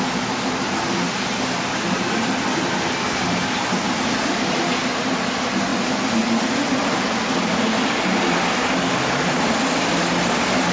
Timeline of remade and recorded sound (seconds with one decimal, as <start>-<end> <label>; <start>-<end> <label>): 0.0-10.7 recorded

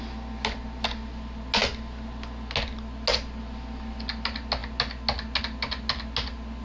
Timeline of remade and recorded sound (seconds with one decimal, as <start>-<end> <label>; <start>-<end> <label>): 0.0-6.6 recorded